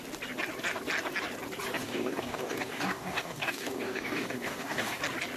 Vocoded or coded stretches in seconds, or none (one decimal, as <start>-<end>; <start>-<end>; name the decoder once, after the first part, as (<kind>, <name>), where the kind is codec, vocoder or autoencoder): 1.8-5.0 (codec, DAC)